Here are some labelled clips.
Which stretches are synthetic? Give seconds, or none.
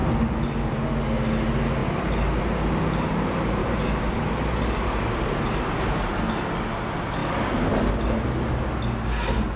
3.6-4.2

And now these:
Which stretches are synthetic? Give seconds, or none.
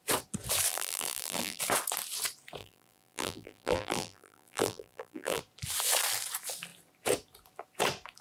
0.7-1.6; 2.6-5.4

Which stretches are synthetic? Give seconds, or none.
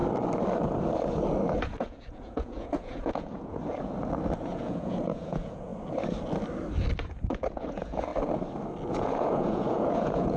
1.6-3.6; 4.4-5.7; 7.0-8.1; 8.9-10.4